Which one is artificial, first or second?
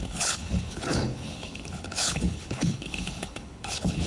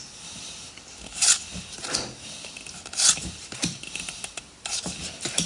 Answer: first